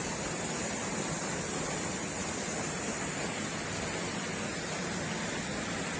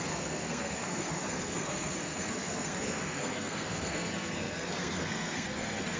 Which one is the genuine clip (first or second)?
first